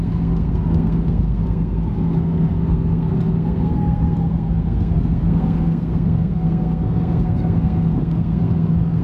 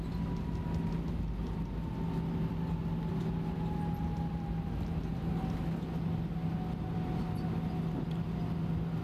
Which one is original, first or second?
second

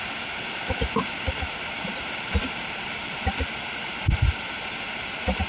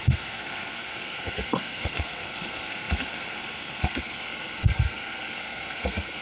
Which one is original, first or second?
first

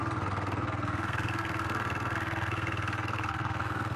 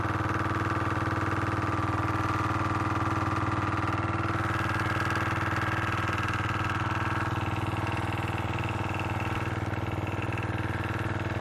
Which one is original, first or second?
second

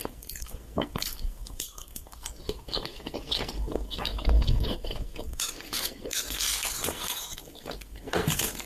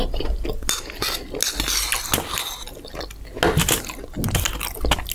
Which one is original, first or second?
second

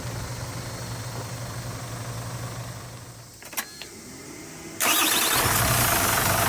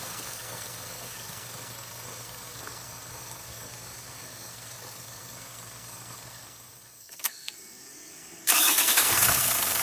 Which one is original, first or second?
first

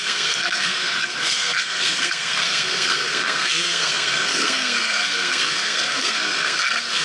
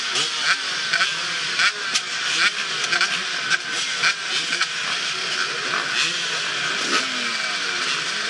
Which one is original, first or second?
second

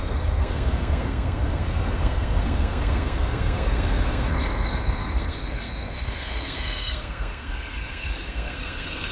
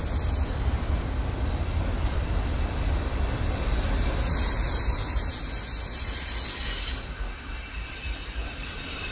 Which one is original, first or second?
second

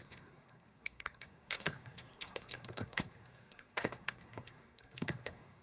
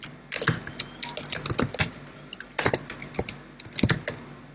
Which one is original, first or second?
second